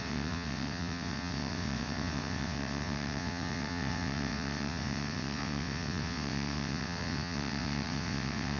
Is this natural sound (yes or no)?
no